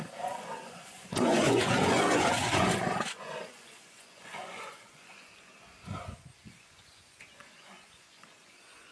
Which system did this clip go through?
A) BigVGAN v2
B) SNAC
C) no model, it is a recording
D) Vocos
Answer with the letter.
D